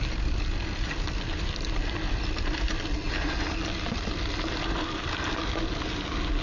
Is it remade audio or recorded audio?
recorded